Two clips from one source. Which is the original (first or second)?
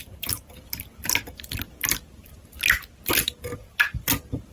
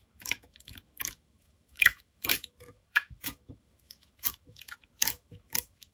first